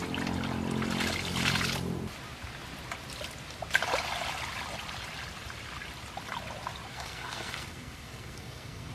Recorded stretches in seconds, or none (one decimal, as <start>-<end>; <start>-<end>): 0.0-6.9